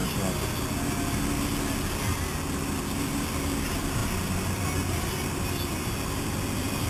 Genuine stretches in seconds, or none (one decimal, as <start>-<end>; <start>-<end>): 0.0-6.9